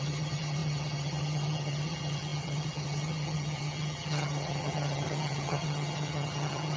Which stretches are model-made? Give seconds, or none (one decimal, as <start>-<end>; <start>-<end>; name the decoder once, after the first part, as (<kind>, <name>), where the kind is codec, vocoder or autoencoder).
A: 0.0-6.8 (vocoder, HiFi-GAN)

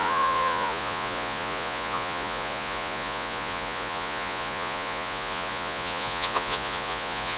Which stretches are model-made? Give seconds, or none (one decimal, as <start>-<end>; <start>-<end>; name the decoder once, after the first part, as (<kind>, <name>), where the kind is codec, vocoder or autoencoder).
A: 0.0-7.4 (vocoder, Vocos)